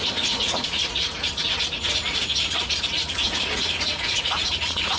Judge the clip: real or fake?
fake